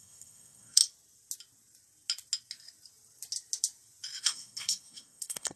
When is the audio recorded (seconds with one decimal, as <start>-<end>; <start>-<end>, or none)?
0.8-4.2